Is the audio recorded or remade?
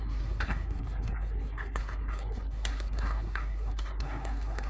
remade